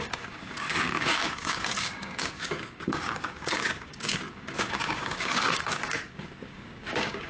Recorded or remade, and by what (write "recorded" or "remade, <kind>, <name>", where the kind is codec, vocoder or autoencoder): remade, codec, DAC